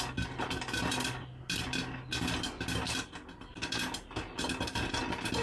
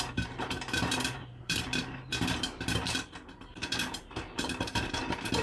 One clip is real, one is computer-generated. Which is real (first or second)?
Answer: first